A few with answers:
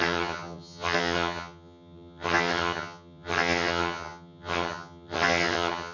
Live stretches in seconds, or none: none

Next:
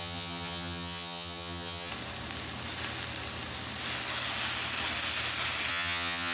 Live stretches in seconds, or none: 1.9-5.7

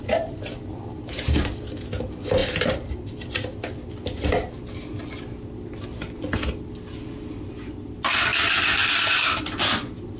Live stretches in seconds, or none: 0.0-10.2

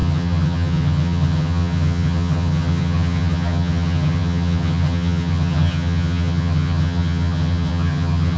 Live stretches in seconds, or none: none

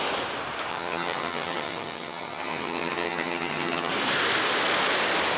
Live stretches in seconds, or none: 0.0-0.7; 3.9-5.4